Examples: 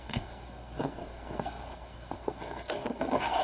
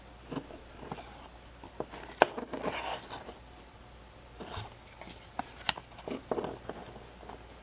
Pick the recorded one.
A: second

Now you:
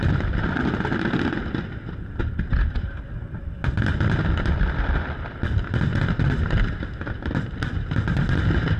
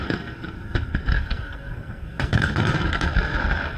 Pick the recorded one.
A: first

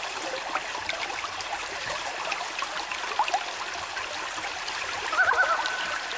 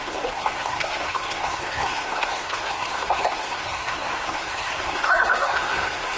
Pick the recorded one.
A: first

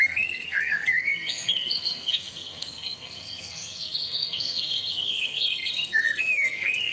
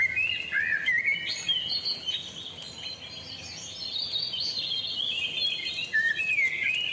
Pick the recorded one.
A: second